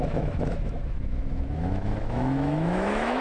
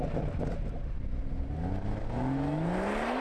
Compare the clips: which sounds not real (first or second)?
first